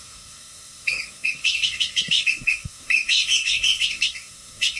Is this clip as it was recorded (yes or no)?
no